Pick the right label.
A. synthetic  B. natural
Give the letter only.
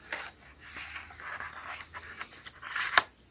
B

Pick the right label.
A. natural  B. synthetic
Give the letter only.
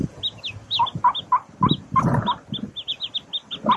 A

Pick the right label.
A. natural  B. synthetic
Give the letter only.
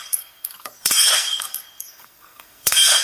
B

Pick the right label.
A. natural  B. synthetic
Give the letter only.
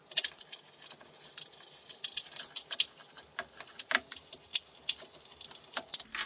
A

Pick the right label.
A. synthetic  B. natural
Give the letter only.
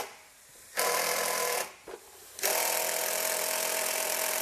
B